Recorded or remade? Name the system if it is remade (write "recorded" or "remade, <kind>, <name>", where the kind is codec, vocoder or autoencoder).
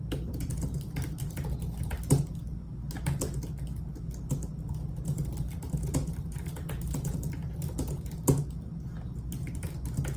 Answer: recorded